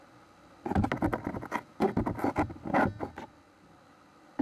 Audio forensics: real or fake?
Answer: real